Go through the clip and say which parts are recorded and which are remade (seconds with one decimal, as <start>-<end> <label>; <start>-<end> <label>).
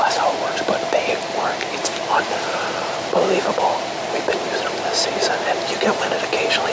0.0-1.8 recorded; 1.8-5.0 remade; 5.0-6.7 recorded